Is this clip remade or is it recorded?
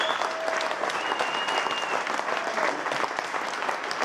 recorded